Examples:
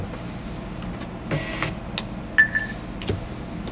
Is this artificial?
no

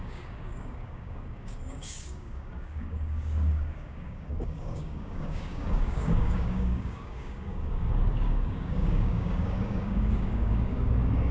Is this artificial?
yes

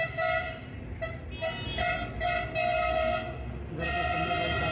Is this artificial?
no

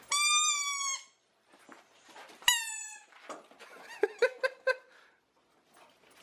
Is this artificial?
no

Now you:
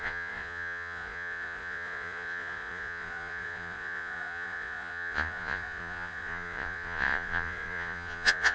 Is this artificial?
yes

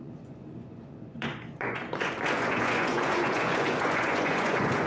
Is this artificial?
yes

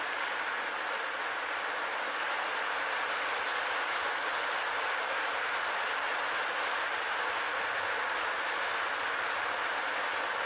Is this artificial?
no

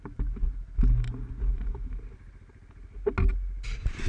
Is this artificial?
no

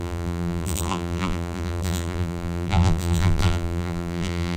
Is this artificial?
yes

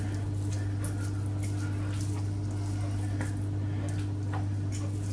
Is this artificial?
no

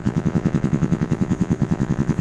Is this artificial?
yes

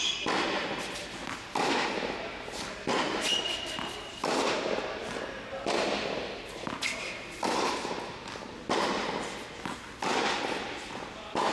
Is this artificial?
no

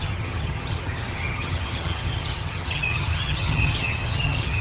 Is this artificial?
yes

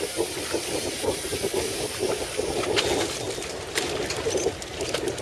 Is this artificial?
no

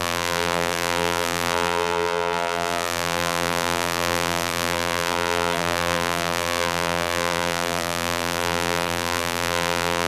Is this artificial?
yes